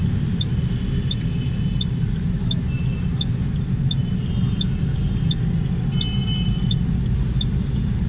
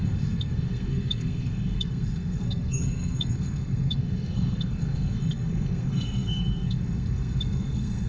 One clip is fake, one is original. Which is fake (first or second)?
second